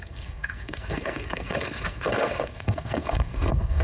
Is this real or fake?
fake